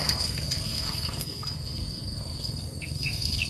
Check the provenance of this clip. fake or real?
fake